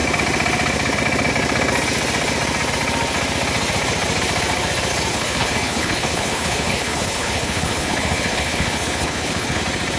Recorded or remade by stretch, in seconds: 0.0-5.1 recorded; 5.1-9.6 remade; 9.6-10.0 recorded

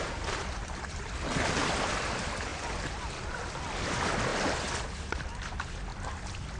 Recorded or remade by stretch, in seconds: 0.0-6.6 recorded

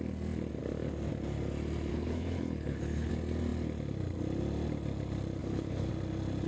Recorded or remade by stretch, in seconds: 0.0-1.9 recorded; 1.9-3.1 remade; 3.1-5.4 recorded; 5.4-5.9 remade; 5.9-6.5 recorded

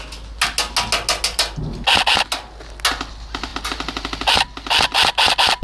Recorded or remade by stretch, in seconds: 0.0-5.6 recorded

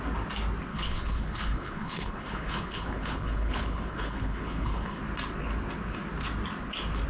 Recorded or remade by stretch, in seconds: 0.0-0.7 recorded; 0.7-5.0 remade; 5.0-7.1 recorded

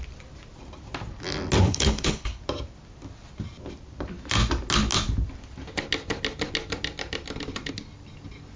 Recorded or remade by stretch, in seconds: 0.0-1.6 recorded; 1.6-2.4 remade; 2.4-8.6 recorded